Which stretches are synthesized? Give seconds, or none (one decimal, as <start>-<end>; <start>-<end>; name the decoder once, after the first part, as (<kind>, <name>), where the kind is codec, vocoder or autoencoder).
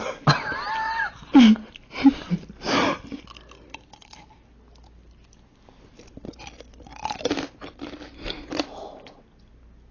none